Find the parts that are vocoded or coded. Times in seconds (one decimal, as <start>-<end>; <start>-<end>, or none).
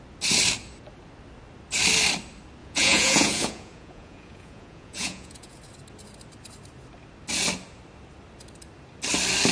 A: 2.6-5.6